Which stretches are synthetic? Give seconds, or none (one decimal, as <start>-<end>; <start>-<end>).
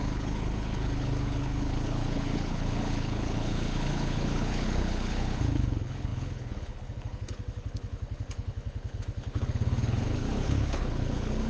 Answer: 0.0-11.5